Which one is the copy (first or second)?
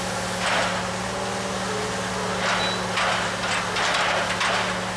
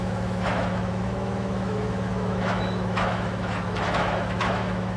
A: second